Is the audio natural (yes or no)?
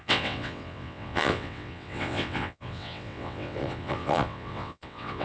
no